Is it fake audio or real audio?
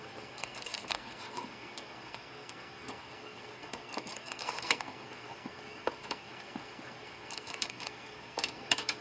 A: fake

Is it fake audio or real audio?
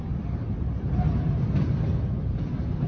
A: real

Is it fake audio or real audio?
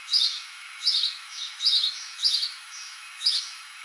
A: fake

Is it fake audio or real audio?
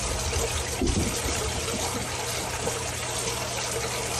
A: real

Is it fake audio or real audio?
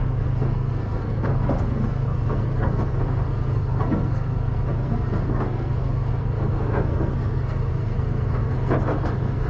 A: fake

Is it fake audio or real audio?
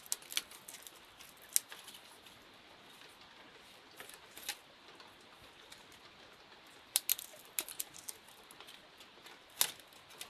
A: real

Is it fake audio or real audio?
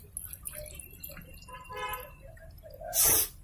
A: real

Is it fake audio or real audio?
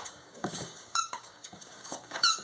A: fake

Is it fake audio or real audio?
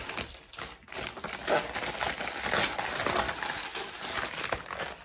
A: real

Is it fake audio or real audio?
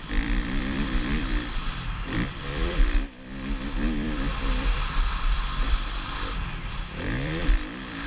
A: fake